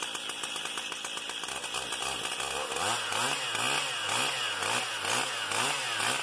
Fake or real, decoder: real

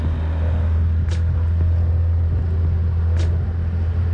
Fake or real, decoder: real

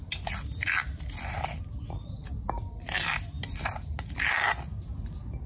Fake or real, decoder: real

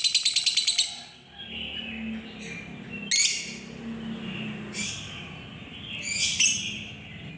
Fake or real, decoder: real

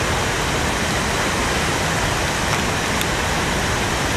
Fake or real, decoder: real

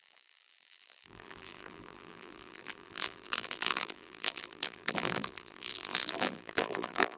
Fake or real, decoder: fake, vocoder, BigVGAN v2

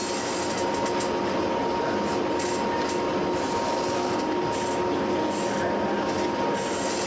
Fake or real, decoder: real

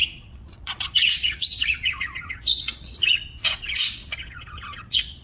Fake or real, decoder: fake, vocoder, Vocos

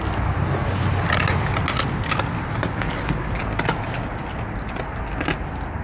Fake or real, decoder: real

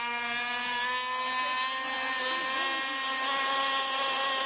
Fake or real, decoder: real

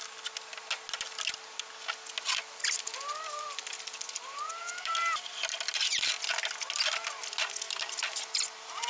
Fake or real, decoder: real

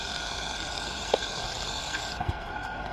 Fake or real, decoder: fake, codec, SNAC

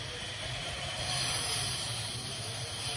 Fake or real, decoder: fake, vocoder, BigVGAN v2